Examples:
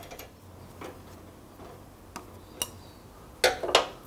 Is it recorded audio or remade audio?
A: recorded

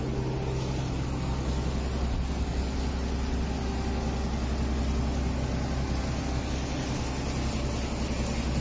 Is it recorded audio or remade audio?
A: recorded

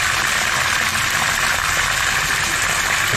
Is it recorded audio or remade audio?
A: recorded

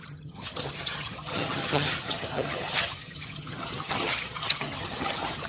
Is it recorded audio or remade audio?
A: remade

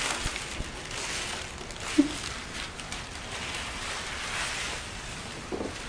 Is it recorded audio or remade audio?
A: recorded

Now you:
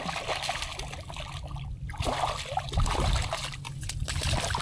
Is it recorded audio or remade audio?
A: recorded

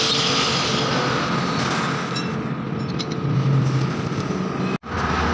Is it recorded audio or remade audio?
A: recorded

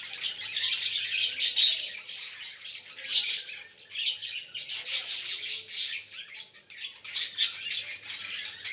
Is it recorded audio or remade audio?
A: recorded